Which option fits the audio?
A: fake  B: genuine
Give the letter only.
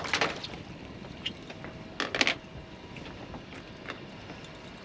B